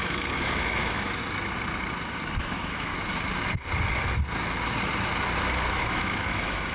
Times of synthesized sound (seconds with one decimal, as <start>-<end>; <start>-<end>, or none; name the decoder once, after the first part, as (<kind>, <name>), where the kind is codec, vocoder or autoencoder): 0.0-1.2 (autoencoder, DAC-VAE); 2.4-2.9; 5.7-6.7